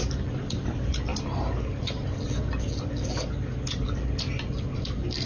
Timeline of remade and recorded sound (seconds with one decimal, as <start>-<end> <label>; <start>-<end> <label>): 0.0-5.3 recorded